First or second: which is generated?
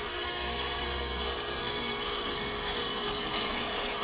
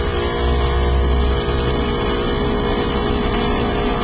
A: first